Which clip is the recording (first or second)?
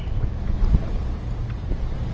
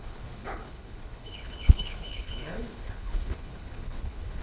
first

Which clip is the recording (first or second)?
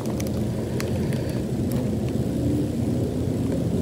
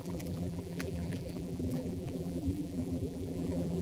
first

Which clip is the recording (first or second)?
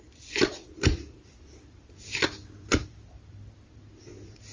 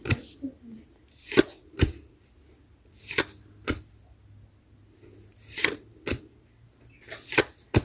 second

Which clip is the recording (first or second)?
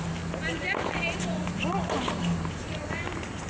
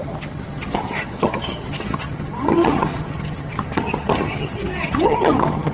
first